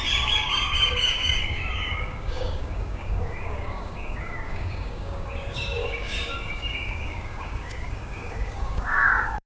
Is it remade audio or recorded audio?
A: remade